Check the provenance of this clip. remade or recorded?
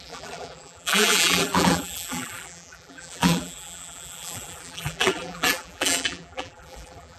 remade